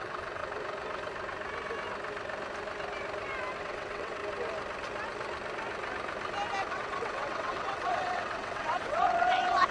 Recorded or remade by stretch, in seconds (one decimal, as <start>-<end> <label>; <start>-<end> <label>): 0.0-0.4 remade; 0.4-3.6 recorded; 3.6-4.2 remade; 4.2-6.7 recorded; 6.7-9.7 remade